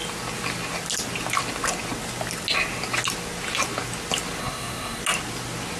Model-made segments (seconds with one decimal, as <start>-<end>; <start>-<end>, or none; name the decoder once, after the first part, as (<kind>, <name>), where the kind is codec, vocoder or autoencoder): 4.4-5.0 (codec, SNAC)